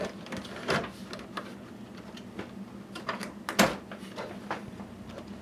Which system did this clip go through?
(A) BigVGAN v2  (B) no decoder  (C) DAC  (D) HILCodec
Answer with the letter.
B